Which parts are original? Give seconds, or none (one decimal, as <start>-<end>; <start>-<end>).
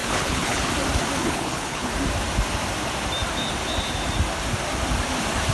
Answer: 0.7-1.2; 1.9-5.5